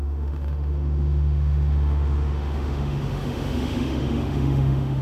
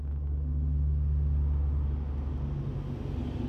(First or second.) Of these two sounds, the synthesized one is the first